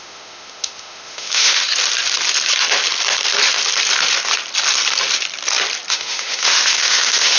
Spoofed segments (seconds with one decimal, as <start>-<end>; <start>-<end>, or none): 0.0-1.6; 5.9-7.4